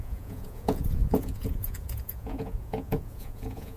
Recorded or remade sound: remade